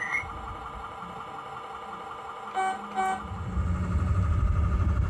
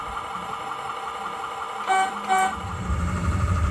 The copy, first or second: second